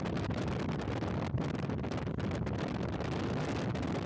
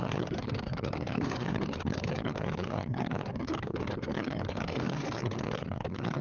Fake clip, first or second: second